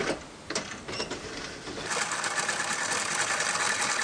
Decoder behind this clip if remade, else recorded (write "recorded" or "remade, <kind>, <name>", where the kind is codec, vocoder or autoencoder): recorded